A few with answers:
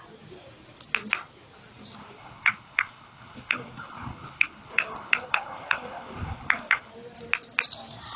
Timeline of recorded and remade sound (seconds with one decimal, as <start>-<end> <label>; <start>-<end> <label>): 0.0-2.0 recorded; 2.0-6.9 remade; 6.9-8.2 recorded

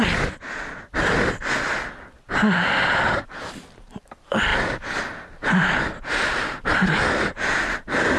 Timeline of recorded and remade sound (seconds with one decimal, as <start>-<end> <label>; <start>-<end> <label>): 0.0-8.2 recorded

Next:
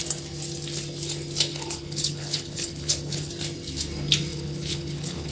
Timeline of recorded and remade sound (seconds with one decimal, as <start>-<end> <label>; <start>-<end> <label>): 0.0-1.5 recorded; 1.5-3.3 remade; 3.3-4.3 recorded; 4.3-5.3 remade

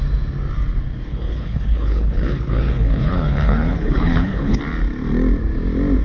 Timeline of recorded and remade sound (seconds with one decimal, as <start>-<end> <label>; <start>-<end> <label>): 0.0-1.0 recorded; 1.0-4.6 remade; 4.6-6.0 recorded

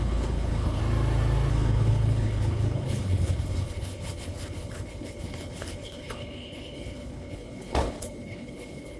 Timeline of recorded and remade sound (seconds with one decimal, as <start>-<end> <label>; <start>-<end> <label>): 0.0-0.8 remade; 0.8-1.5 recorded; 1.5-9.0 remade

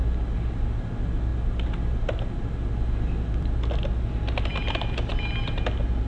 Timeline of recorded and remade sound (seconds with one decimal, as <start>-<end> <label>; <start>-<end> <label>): 0.0-6.1 recorded

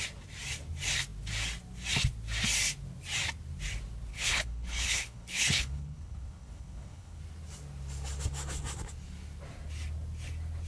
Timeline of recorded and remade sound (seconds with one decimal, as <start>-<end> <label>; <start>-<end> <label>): 0.0-4.1 recorded; 4.1-7.2 remade; 7.2-10.7 recorded